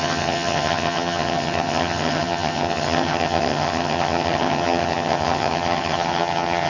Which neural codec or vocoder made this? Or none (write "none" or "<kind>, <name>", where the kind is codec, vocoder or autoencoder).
vocoder, HiFi-GAN